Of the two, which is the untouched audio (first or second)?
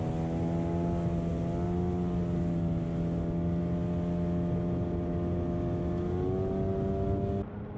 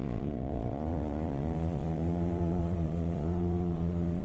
first